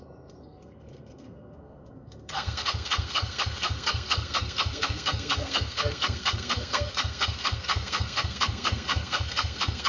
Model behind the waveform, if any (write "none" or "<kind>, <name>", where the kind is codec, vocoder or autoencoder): codec, SNAC